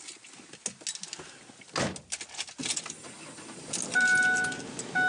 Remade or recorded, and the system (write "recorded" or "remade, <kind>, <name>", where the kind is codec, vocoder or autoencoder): recorded